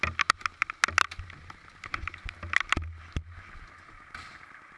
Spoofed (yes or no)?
no